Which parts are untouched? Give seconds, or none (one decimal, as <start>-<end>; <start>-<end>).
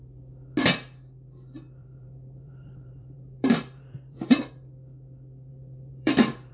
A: 0.0-1.8; 4.5-5.5